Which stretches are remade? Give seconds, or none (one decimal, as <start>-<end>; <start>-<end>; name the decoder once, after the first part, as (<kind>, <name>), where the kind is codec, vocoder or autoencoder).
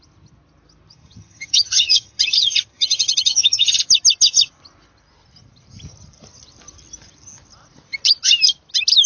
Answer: 0.9-3.8 (vocoder, HiFi-GAN)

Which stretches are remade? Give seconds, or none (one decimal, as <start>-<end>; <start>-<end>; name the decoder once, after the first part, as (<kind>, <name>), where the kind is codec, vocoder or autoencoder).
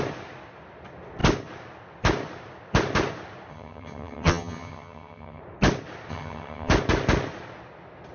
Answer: 3.5-5.4 (vocoder, HiFi-GAN); 6.1-6.7